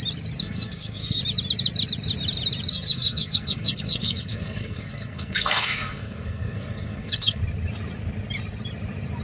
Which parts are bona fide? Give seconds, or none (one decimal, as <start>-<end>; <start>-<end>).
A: 0.0-0.4; 1.2-2.7; 7.4-9.2